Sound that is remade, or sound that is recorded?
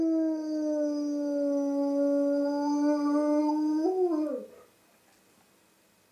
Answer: recorded